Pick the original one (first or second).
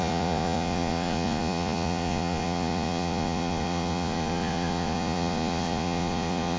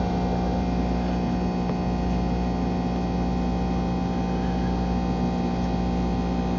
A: second